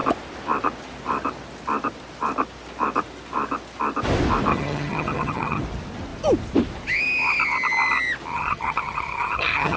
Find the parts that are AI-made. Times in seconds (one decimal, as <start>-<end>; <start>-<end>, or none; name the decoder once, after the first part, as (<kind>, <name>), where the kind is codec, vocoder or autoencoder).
4.5-5.6 (vocoder, HiFi-GAN); 8.3-9.8